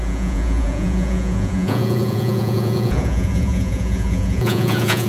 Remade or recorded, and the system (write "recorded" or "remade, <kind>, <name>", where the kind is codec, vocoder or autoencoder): remade, vocoder, Vocos